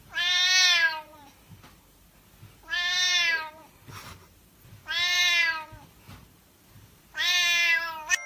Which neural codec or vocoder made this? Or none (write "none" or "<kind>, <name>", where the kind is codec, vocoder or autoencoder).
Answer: vocoder, BigVGAN v2